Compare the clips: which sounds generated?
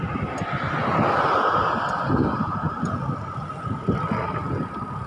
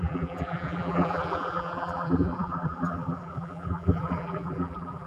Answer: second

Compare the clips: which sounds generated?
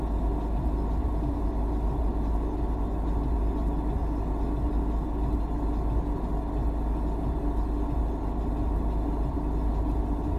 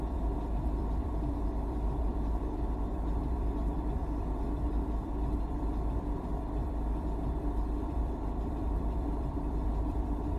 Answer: second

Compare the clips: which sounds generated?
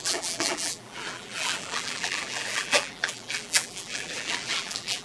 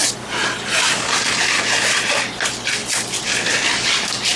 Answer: first